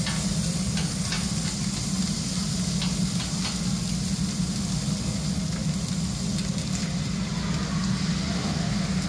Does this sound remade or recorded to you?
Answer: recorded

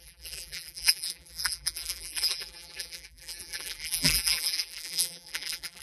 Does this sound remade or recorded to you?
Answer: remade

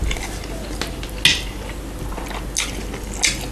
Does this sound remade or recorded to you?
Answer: recorded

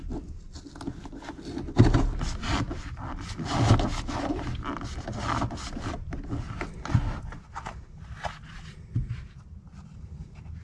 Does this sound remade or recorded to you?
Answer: recorded